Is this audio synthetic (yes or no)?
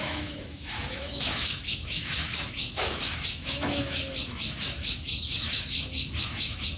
yes